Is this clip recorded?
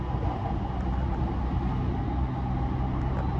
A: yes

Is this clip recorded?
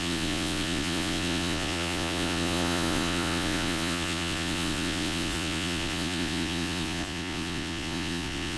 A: no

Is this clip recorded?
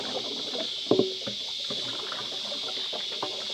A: yes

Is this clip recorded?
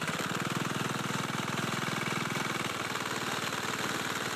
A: yes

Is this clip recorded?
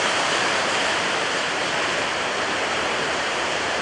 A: no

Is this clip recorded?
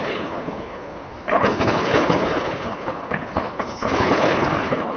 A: no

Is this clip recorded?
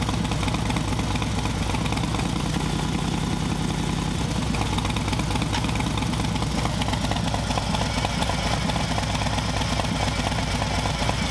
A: yes